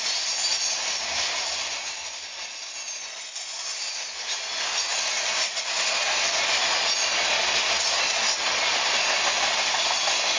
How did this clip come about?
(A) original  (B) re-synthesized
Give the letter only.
A